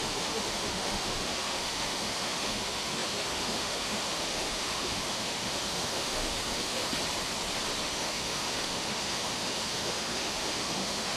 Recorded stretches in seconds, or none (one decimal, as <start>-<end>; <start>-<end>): 6.9-7.8